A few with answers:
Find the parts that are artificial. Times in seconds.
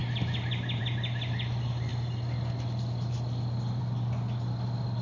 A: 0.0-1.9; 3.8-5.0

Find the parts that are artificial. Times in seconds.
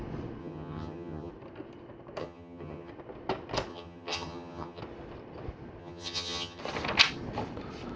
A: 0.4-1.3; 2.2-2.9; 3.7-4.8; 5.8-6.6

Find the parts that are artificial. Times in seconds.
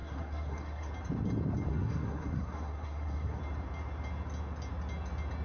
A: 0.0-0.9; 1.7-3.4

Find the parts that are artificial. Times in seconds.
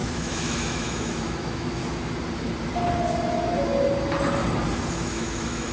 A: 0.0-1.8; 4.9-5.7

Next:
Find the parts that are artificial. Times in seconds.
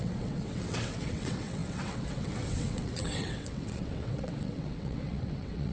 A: 0.0-5.7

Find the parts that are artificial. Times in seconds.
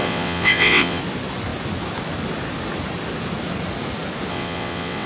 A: 0.0-1.0; 4.3-5.1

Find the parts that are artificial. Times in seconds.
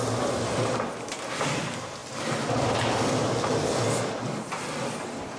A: none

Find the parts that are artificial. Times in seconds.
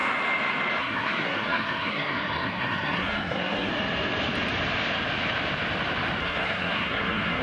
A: 0.8-3.7; 6.2-7.4